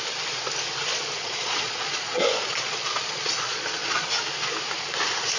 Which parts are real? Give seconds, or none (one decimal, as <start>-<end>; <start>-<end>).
0.0-0.9; 4.1-5.4